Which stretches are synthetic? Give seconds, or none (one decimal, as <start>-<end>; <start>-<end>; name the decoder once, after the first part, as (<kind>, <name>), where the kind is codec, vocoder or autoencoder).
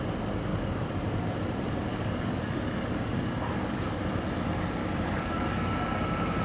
0.5-1.0 (codec, DAC); 1.9-4.0; 4.8-5.7